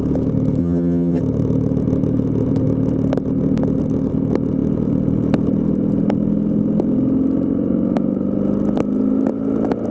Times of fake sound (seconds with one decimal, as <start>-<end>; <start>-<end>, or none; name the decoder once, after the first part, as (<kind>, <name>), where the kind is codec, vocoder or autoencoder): 0.6-1.2 (vocoder, HiFi-GAN)